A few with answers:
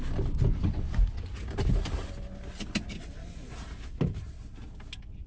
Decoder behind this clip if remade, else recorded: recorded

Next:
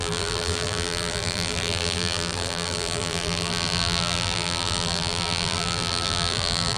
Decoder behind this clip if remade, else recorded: remade, vocoder, BigVGAN v2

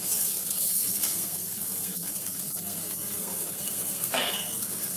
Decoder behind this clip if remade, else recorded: remade, codec, SNAC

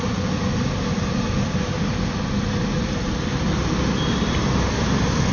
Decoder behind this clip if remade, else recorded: recorded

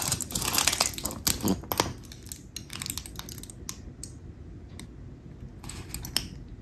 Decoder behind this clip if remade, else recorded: recorded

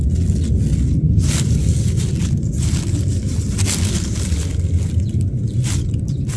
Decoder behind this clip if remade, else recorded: recorded